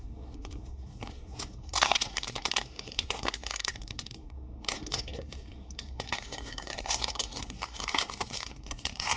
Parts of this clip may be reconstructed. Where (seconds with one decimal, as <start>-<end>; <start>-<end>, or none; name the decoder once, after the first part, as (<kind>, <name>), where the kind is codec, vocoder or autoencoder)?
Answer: 0.0-9.2 (codec, SNAC)